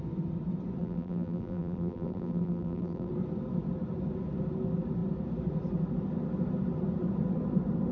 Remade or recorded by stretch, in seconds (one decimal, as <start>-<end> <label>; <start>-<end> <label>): 0.0-0.8 recorded; 0.8-3.1 remade; 3.1-7.9 recorded